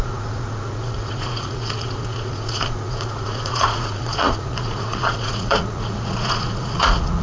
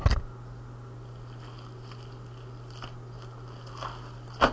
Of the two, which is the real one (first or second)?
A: second